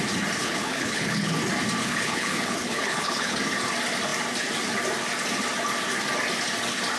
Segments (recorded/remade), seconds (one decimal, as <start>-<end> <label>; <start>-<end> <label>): 0.0-0.4 recorded; 0.4-1.3 remade; 1.3-1.8 recorded; 1.8-3.4 remade; 3.4-7.0 recorded